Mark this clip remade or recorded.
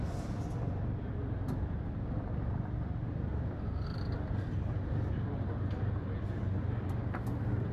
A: recorded